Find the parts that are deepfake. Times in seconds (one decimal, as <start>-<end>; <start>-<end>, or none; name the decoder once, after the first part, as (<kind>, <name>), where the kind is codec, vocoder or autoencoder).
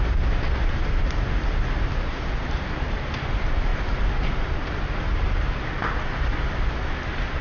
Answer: none